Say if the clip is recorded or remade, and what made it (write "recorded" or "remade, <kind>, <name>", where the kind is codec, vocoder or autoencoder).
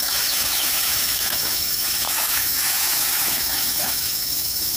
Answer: remade, autoencoder, DAC-VAE